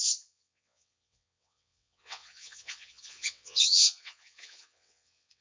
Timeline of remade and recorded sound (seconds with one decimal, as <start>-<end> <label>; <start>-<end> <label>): 0.0-5.4 remade